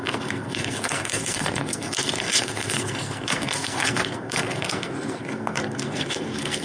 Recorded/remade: remade